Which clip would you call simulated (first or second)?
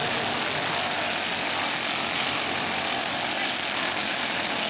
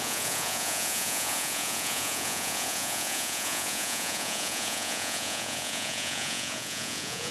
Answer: second